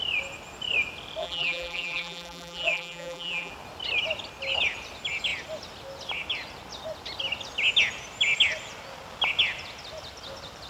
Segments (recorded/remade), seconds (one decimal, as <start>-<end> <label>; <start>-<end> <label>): 0.0-1.2 recorded; 1.2-3.5 remade; 3.5-10.7 recorded